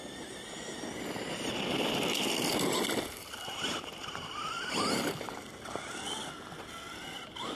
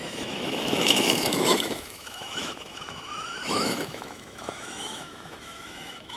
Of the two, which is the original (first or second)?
first